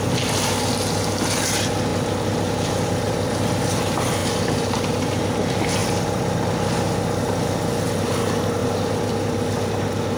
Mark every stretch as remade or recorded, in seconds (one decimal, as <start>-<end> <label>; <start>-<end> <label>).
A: 0.0-1.9 recorded; 1.9-3.1 remade; 3.1-4.2 recorded; 4.2-5.2 remade; 5.2-5.8 recorded; 5.8-7.7 remade; 7.7-8.6 recorded; 8.6-10.2 remade